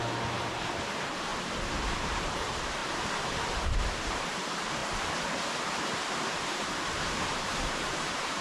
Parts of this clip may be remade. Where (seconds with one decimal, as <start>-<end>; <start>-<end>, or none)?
0.0-1.3; 2.0-4.8; 6.3-8.4